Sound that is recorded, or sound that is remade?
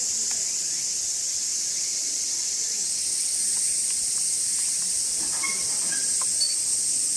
recorded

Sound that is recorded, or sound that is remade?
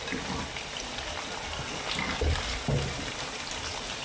recorded